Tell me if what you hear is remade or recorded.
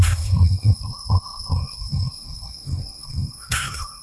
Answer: remade